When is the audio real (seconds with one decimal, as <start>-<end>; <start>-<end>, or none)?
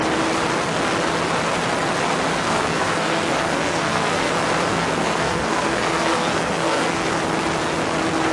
0.0-2.3; 4.3-4.7; 7.1-8.3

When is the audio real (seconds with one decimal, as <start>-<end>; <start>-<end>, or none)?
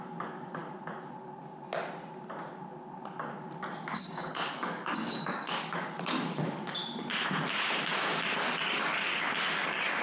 0.6-3.7; 6.8-8.3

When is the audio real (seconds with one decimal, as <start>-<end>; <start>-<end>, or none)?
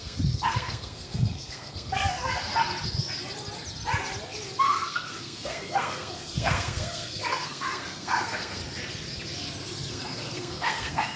2.5-4.6; 8.6-9.9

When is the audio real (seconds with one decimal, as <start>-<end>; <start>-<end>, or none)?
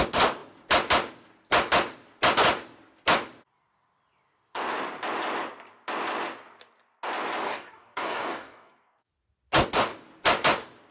0.0-7.4; 9.1-10.9